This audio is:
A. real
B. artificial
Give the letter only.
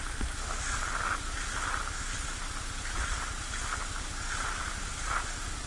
A